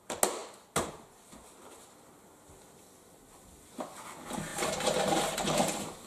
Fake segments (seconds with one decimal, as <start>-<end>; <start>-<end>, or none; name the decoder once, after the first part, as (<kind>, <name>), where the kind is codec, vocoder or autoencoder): none